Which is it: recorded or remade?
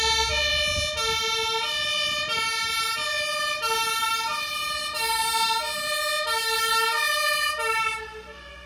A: recorded